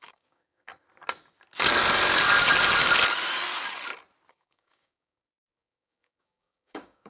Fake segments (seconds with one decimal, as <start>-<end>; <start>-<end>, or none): 0.0-0.7; 4.3-7.1

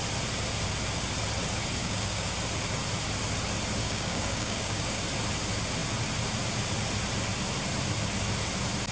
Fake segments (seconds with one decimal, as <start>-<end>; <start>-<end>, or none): 1.8-2.3; 3.8-5.0

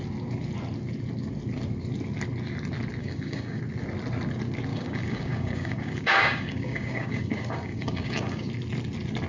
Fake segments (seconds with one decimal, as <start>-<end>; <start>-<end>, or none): 3.0-3.6; 4.7-8.5